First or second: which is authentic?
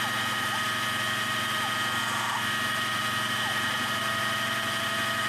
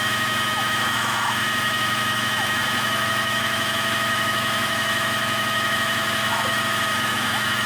first